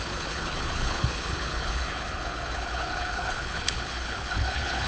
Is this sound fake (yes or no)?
yes